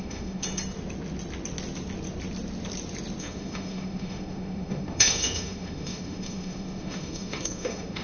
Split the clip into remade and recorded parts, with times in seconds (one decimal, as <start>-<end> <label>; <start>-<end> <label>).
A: 0.0-0.4 remade; 0.4-3.2 recorded; 3.2-8.0 remade